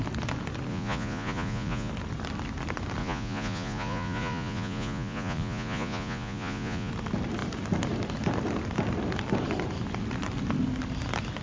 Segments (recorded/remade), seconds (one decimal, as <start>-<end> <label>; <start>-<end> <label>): 0.0-0.7 recorded; 0.7-1.9 remade; 1.9-3.0 recorded; 3.0-6.9 remade; 6.9-11.4 recorded

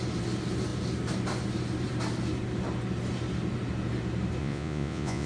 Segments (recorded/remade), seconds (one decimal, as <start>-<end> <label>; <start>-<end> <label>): 0.0-4.4 recorded; 4.4-5.3 remade

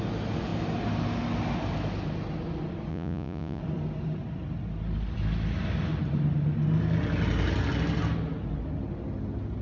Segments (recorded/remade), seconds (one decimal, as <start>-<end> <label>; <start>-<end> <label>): 0.0-2.9 recorded; 2.9-3.6 remade; 3.6-9.6 recorded

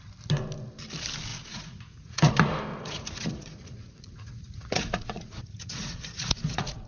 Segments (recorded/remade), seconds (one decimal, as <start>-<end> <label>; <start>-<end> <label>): 0.0-1.3 recorded; 1.3-2.3 remade; 2.3-2.7 recorded; 2.7-6.9 remade

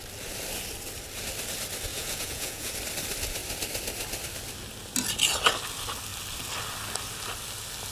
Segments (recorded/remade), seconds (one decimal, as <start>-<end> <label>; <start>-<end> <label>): 0.0-1.9 recorded; 1.9-2.7 remade; 2.7-7.9 recorded

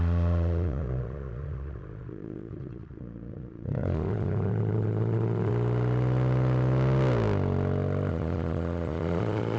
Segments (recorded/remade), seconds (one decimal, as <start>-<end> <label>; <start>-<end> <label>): 0.0-5.5 remade; 5.5-8.1 recorded; 8.1-9.6 remade

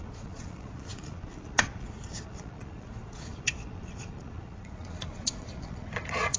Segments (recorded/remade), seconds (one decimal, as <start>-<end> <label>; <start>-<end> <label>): 0.0-6.4 remade